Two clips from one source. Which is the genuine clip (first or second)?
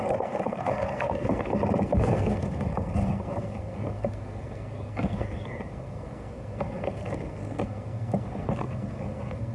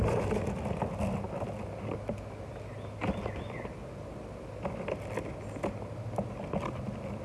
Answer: second